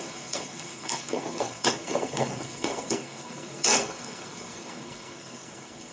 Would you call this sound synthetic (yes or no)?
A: yes